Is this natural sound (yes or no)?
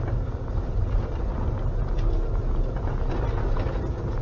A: yes